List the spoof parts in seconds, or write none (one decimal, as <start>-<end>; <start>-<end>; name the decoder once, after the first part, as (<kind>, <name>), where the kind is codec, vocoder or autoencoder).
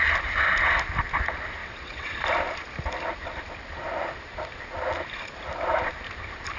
1.6-2.1 (vocoder, WaveNeXt)